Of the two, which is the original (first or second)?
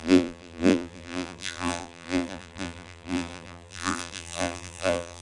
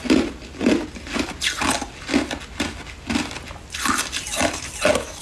second